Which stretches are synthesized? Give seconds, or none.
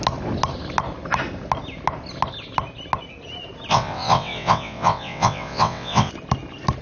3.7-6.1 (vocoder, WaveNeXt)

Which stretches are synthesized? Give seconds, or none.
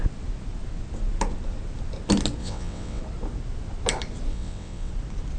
2.4-3.0 (vocoder, WaveNeXt); 4.3-4.9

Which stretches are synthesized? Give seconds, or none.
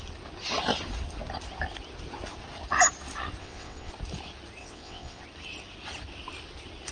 3.4-3.9 (vocoder, WaveNeXt); 4.6-5.2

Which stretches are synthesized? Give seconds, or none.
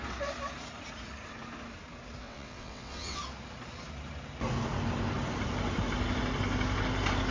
2.2-3.2 (vocoder, WaveNeXt)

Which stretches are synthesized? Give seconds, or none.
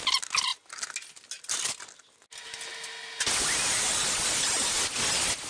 none